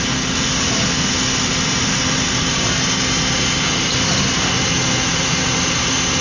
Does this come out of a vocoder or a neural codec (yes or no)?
no